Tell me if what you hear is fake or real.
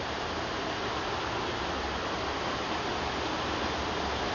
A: real